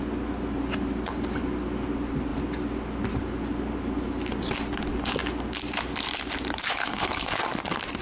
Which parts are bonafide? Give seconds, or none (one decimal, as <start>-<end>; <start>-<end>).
0.0-6.8; 7.4-8.0